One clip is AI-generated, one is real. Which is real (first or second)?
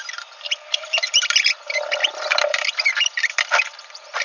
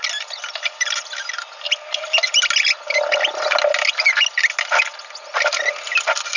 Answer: second